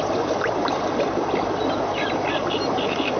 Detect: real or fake real